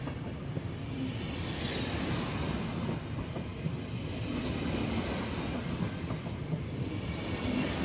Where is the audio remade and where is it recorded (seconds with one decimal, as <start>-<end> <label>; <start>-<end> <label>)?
0.0-7.8 recorded